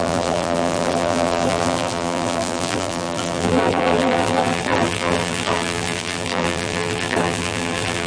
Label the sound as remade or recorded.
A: remade